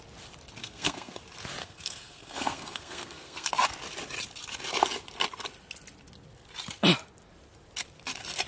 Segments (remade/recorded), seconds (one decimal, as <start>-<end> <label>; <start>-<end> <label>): 0.0-0.6 recorded; 0.6-1.2 remade; 1.2-1.6 recorded; 1.6-3.5 remade; 3.5-8.5 recorded